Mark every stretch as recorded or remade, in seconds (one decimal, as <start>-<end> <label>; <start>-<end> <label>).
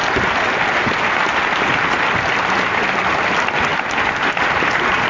0.0-5.1 recorded